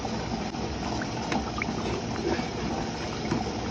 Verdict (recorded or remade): recorded